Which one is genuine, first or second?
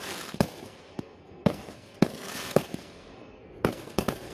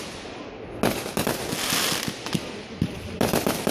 second